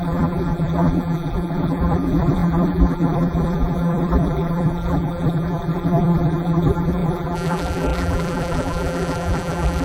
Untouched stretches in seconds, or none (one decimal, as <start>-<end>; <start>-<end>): none